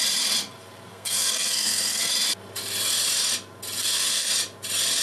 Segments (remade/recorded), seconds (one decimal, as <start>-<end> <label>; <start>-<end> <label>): 0.0-0.9 recorded; 0.9-2.1 remade; 2.1-3.8 recorded; 3.8-4.3 remade; 4.3-5.0 recorded